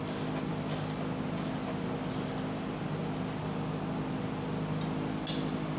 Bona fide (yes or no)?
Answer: yes